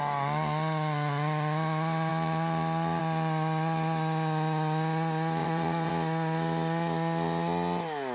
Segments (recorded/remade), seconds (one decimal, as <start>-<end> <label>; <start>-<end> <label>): 0.0-5.4 recorded; 5.4-5.9 remade; 5.9-8.1 recorded